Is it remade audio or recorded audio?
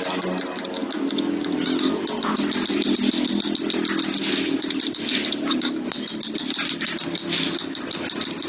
recorded